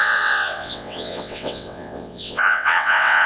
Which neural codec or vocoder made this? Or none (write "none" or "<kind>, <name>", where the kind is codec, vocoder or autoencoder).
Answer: vocoder, WaveNeXt